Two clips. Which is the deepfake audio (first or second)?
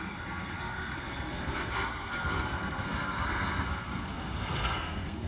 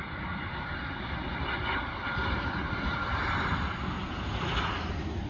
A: first